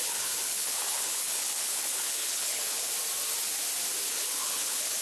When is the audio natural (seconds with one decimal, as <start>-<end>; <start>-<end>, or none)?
2.9-4.1